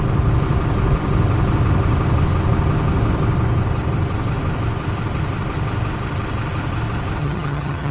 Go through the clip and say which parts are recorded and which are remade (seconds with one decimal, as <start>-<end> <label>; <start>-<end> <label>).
0.0-7.2 recorded; 7.2-7.9 remade